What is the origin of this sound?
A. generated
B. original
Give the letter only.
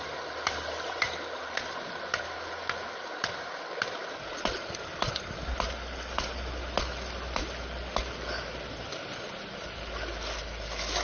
B